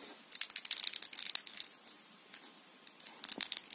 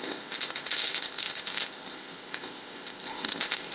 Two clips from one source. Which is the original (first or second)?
first